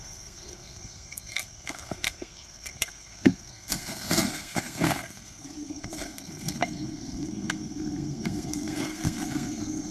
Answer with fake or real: fake